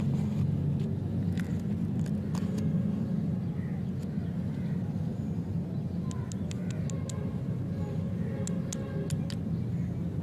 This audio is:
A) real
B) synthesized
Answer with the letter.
A